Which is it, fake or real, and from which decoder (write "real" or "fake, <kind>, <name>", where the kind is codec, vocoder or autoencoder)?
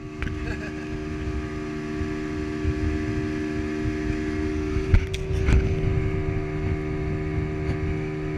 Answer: real